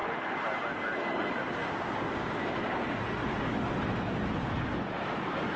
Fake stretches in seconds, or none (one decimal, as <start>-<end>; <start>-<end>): 1.6-3.0

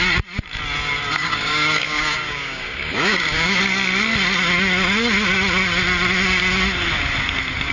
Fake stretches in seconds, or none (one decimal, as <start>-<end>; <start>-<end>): 1.2-3.6

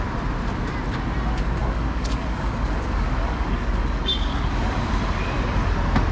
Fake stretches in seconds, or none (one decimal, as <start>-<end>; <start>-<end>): 1.6-4.9